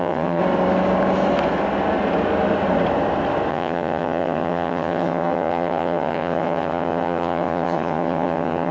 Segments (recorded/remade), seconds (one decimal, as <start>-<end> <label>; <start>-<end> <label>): 0.0-0.4 remade; 0.4-3.5 recorded; 3.5-8.7 remade